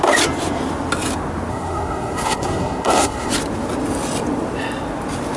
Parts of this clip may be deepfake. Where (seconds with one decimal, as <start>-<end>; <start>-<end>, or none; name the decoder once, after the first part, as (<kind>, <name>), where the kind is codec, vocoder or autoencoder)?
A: 1.5-3.3 (codec, SNAC)